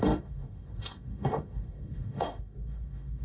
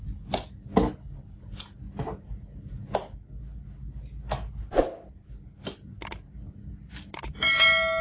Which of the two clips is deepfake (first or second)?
first